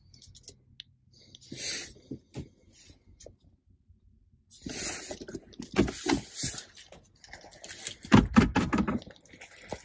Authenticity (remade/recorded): recorded